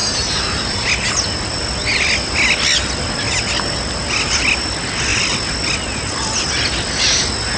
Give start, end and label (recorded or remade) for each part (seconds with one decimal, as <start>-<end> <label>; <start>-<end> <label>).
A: 0.0-0.9 remade; 0.9-7.6 recorded